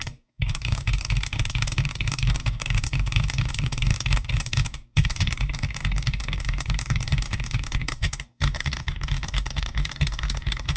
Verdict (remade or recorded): remade